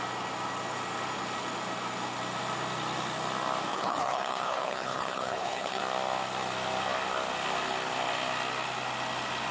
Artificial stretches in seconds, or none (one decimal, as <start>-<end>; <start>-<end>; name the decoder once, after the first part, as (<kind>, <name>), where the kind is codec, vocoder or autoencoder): 3.7-5.8 (codec, HILCodec)